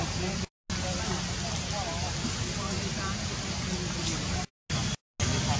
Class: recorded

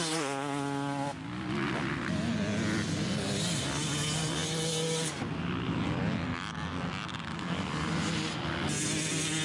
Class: recorded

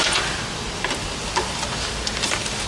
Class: remade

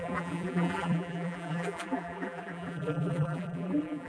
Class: remade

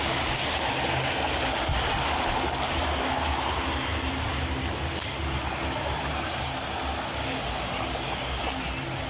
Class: recorded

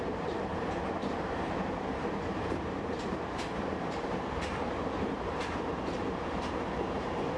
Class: remade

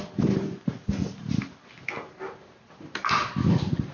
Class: recorded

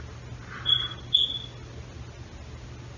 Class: recorded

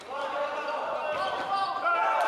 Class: recorded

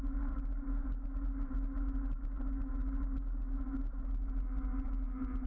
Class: recorded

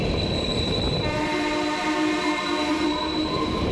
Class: remade